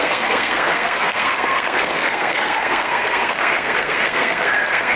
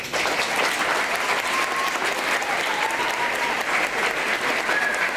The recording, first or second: second